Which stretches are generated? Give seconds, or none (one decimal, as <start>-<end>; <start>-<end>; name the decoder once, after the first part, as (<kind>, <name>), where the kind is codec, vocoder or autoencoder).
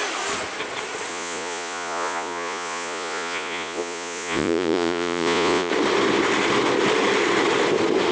1.1-5.7 (vocoder, Vocos)